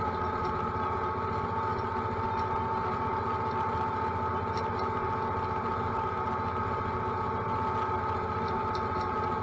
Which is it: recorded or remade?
recorded